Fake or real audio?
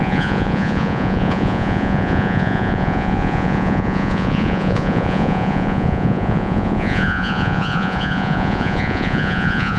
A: fake